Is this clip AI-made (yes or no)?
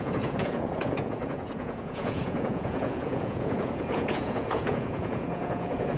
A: yes